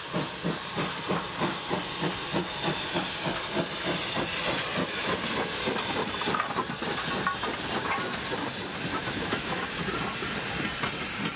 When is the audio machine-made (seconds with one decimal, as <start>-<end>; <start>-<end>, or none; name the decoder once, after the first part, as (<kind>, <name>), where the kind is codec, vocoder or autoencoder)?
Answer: 8.9-9.8 (autoencoder, DAC-VAE)